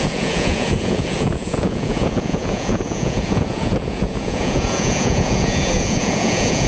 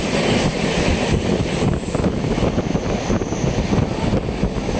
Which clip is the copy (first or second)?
first